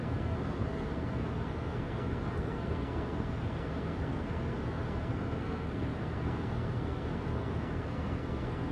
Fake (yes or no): yes